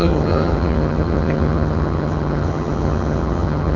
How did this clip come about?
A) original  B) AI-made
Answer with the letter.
B